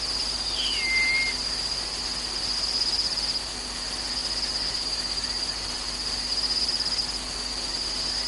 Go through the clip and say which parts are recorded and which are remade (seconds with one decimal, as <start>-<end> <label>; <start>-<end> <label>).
0.0-8.3 recorded